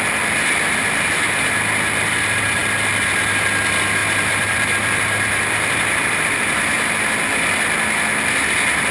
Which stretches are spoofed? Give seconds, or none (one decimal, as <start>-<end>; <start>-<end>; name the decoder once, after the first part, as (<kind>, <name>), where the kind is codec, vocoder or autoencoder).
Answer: 2.6-3.6 (vocoder, BigVGAN v2); 4.0-7.1